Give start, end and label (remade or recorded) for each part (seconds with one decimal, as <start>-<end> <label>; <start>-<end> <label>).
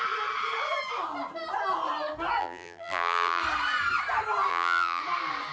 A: 0.0-2.4 recorded; 2.4-3.4 remade; 3.4-4.5 recorded; 4.5-5.0 remade; 5.0-5.5 recorded